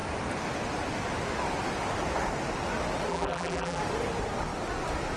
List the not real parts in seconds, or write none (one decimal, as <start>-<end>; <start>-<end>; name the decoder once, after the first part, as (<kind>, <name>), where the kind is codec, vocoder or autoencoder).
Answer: 3.1-3.8 (vocoder, BigVGAN v2)